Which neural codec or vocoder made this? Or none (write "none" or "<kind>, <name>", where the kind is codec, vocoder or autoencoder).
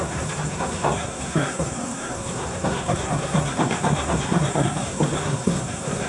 codec, SNAC